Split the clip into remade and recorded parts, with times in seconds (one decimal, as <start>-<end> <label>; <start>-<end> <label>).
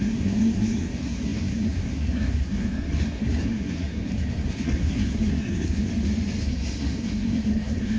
0.0-5.9 remade; 5.9-6.4 recorded; 6.4-8.0 remade